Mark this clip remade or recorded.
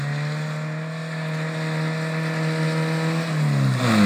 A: recorded